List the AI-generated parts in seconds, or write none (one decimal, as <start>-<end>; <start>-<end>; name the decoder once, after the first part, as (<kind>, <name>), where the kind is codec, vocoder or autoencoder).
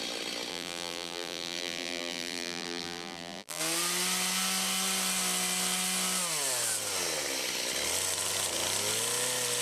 0.5-3.6 (vocoder, BigVGAN v2)